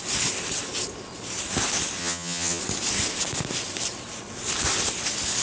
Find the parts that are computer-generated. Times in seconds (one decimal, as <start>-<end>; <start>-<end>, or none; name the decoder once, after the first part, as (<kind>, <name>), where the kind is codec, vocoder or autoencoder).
2.0-2.6 (vocoder, HiFi-GAN)